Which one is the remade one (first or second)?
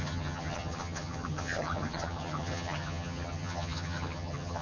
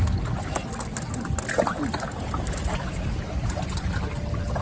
first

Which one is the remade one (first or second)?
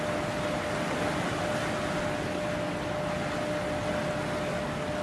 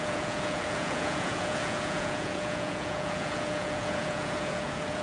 second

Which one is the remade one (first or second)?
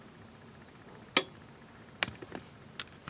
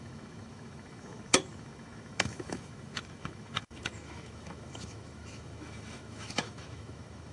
second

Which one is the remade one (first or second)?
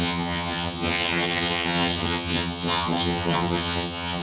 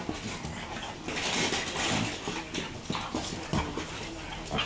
first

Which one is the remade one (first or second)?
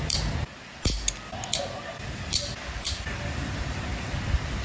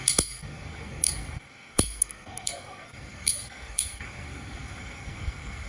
second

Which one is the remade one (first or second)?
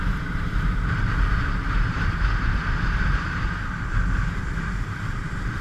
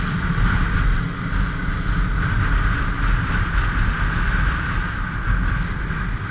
first